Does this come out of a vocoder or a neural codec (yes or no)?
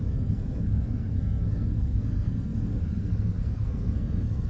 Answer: yes